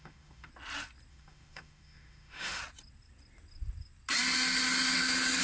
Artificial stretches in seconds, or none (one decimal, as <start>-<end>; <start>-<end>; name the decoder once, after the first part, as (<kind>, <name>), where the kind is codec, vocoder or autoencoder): 0.0-0.5 (autoencoder, DAC-VAE); 1.1-2.6